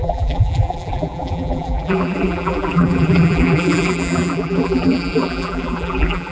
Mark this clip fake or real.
fake